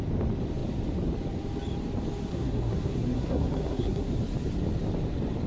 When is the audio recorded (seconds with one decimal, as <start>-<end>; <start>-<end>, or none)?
0.0-2.3; 4.1-5.5